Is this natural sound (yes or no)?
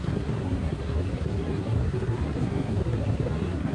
no